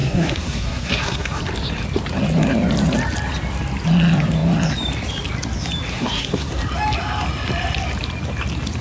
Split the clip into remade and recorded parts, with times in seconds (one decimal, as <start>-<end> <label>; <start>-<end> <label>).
0.0-1.4 remade; 1.4-5.9 recorded; 5.9-6.6 remade; 6.6-8.8 recorded